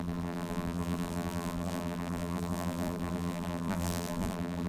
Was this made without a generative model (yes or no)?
no